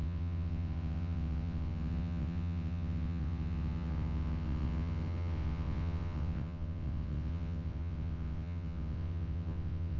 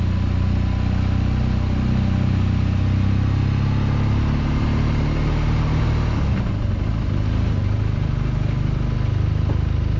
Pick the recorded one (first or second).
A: second